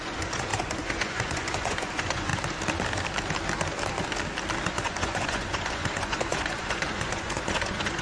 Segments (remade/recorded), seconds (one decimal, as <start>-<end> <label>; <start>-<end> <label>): 0.0-2.3 remade; 2.3-4.6 recorded; 4.6-8.0 remade